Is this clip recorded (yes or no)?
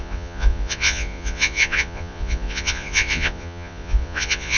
no